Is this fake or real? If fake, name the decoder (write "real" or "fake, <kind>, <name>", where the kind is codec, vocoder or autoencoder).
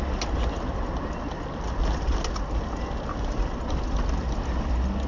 real